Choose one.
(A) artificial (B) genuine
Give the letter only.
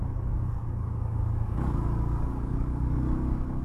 A